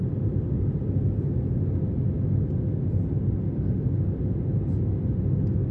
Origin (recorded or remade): recorded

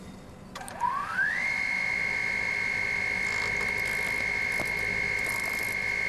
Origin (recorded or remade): recorded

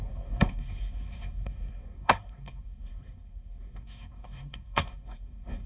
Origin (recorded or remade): remade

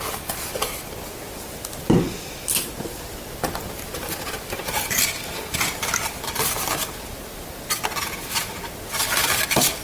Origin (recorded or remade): recorded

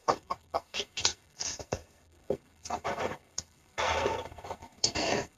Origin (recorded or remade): remade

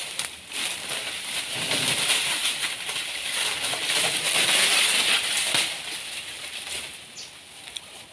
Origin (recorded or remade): recorded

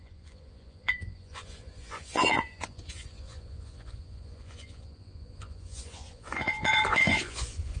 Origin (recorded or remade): remade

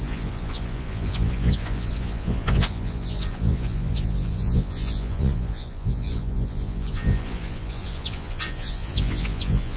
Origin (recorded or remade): remade